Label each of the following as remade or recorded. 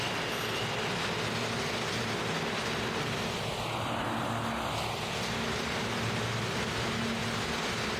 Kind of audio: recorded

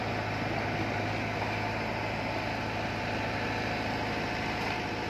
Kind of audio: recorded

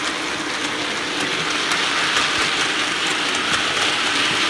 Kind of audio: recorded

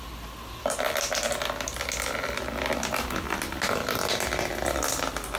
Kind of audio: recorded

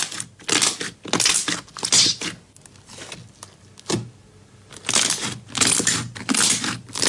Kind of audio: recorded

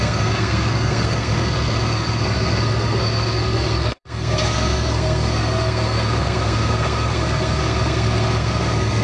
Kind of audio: remade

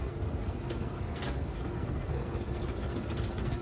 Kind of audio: remade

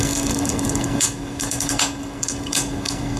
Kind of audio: remade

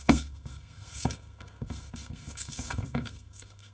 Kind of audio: remade